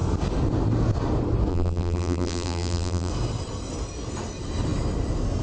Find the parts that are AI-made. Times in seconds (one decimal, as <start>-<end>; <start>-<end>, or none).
1.5-3.1